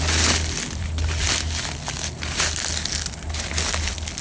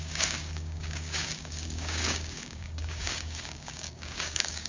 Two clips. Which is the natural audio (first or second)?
first